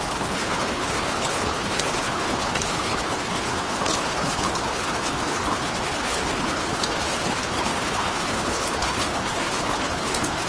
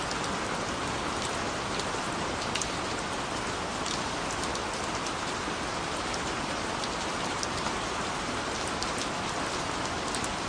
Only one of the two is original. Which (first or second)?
second